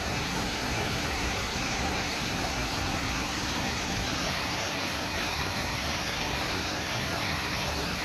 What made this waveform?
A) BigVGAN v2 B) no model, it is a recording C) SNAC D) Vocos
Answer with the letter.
C